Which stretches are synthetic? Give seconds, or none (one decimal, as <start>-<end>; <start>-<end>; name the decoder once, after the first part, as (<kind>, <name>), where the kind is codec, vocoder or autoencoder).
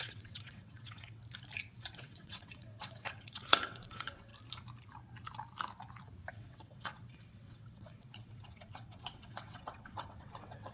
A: 0.0-1.2 (vocoder, WaveNeXt); 1.8-4.3; 6.3-10.7